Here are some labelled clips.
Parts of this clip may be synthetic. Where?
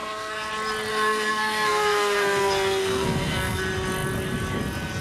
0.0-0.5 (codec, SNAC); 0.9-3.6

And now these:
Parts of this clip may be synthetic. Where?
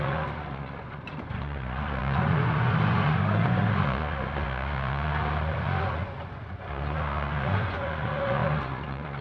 0.0-9.2 (vocoder, Vocos)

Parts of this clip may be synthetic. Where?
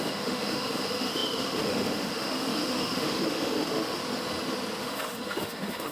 0.0-4.0 (autoencoder, DAC-VAE); 4.8-5.9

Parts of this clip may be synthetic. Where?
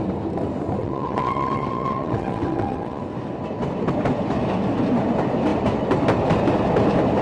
0.8-3.0 (vocoder, WaveNeXt)